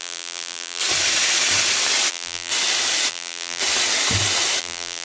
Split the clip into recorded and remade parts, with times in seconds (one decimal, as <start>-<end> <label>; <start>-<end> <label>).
0.0-0.8 remade; 0.8-2.1 recorded; 2.1-2.5 remade; 2.5-3.1 recorded; 3.1-3.6 remade; 3.6-4.6 recorded; 4.6-5.0 remade